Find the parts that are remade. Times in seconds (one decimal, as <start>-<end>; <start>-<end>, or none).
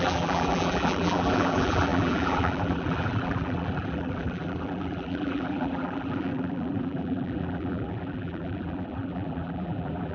0.0-10.1